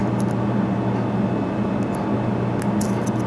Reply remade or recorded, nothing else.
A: recorded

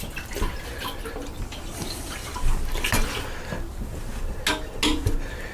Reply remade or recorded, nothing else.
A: recorded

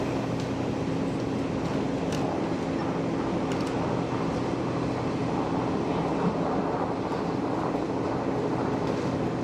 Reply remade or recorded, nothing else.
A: recorded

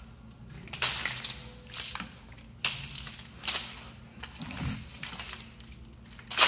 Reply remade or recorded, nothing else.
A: recorded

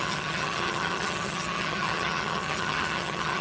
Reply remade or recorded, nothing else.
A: remade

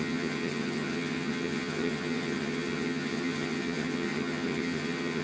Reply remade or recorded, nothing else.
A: remade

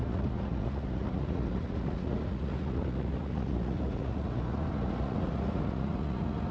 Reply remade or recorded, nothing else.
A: remade